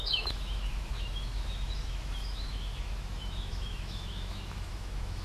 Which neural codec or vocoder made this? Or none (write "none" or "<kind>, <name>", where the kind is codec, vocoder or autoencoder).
autoencoder, DAC-VAE